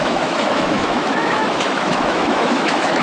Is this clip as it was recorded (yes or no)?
no